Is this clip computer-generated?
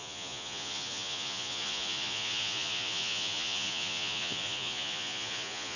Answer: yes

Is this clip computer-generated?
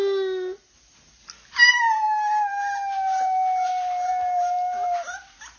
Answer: no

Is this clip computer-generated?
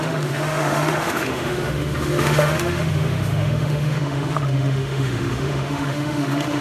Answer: yes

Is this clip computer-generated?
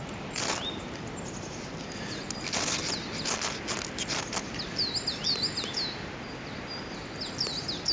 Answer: no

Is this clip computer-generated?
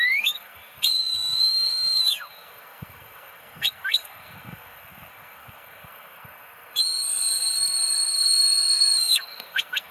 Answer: yes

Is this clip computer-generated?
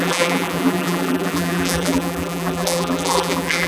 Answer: yes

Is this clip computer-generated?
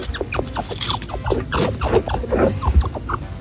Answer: no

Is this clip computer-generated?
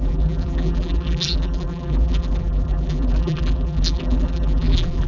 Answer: yes